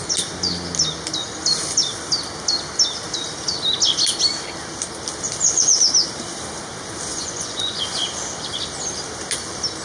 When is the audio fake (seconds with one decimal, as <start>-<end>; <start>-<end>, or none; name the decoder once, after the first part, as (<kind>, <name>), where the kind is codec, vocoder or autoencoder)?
7.1-7.8 (vocoder, Vocos)